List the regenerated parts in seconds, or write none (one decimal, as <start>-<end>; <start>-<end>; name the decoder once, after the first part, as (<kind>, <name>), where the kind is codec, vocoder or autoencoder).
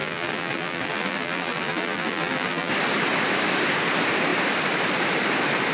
0.0-2.7 (vocoder, BigVGAN v2)